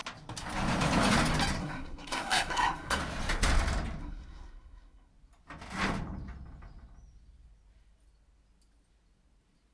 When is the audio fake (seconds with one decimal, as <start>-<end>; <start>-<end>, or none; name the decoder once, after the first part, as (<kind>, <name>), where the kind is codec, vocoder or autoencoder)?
1.6-3.0 (codec, SNAC); 4.0-5.1